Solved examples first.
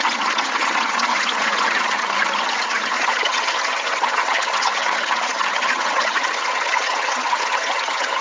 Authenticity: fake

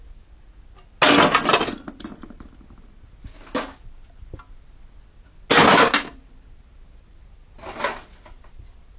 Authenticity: real